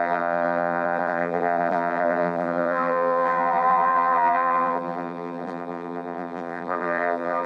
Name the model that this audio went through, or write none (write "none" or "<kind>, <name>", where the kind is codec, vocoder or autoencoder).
vocoder, BigVGAN v2